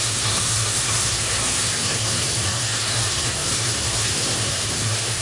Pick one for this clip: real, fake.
fake